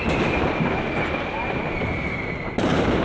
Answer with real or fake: real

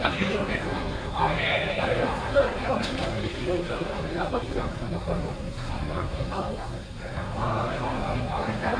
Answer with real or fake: fake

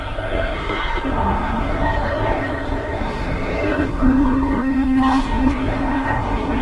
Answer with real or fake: fake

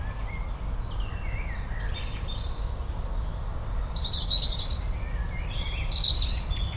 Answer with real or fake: real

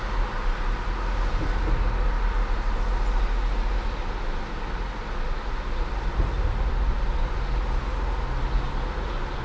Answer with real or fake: real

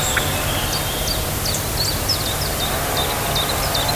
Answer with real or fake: real